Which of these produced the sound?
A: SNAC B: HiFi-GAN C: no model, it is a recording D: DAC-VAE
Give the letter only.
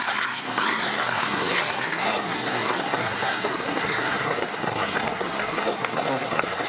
A